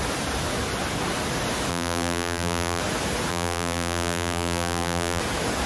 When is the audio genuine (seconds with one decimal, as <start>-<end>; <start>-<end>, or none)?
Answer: 0.0-1.7; 2.8-3.3; 5.2-5.7